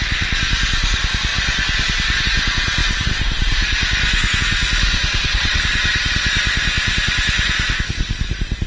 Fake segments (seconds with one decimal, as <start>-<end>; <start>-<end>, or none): 4.9-5.6